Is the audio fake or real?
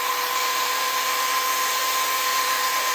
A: fake